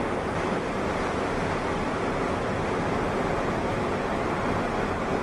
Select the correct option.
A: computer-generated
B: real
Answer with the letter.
B